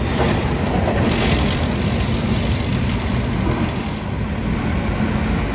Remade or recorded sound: recorded